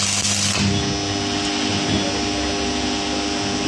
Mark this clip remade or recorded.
recorded